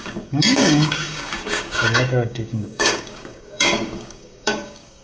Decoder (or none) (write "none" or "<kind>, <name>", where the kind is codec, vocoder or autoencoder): codec, DAC